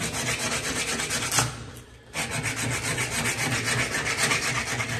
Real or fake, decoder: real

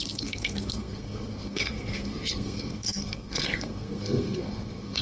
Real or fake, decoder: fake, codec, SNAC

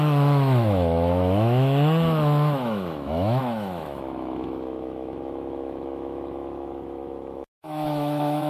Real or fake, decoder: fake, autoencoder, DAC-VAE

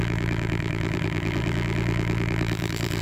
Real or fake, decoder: fake, vocoder, BigVGAN v2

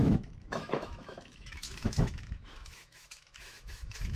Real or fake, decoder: fake, autoencoder, DAC-VAE